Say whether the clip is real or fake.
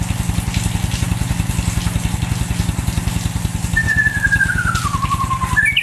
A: real